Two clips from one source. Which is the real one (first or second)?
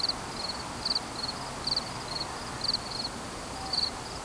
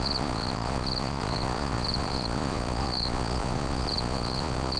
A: first